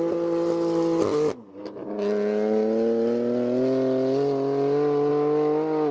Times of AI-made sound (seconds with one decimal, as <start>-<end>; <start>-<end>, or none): none